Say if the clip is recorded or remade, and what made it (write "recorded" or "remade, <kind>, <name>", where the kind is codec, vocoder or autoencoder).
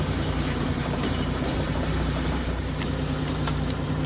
remade, vocoder, BigVGAN v2